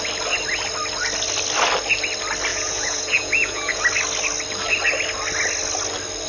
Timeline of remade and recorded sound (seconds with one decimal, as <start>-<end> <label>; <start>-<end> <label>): 0.0-2.5 recorded; 2.5-3.8 remade; 3.8-6.3 recorded